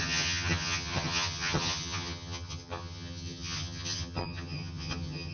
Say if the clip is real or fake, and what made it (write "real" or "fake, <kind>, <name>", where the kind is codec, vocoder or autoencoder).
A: fake, vocoder, HiFi-GAN